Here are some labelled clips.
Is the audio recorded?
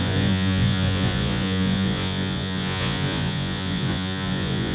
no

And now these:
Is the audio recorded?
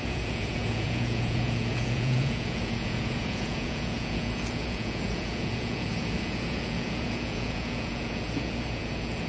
no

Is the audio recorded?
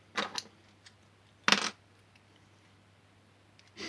yes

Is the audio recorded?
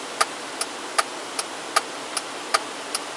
yes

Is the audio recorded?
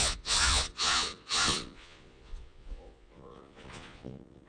no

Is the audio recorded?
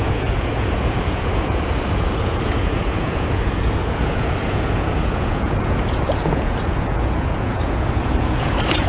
no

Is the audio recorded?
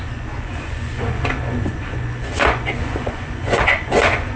no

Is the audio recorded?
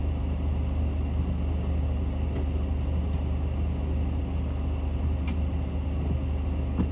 yes